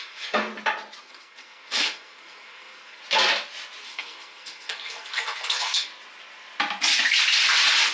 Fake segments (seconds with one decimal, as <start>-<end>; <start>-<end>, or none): 0.0-0.5; 1.0-3.0; 3.8-5.9